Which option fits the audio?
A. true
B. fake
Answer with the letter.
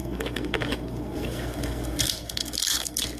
B